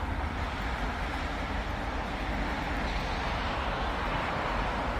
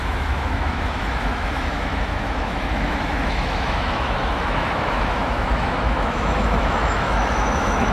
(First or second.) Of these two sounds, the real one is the first